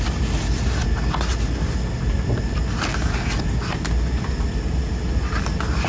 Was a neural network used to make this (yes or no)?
no